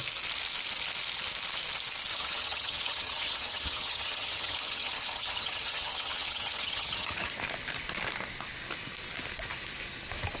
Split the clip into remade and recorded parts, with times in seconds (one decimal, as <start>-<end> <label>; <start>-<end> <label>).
0.0-2.1 recorded; 2.1-7.3 remade; 7.3-10.4 recorded